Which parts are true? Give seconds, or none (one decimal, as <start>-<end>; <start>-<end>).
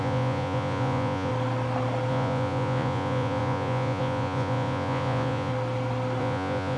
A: 1.3-2.1; 5.5-6.2